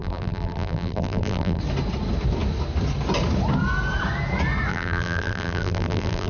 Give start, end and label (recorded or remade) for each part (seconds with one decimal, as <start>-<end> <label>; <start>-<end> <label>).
0.0-1.6 remade; 1.6-4.7 recorded; 4.7-6.3 remade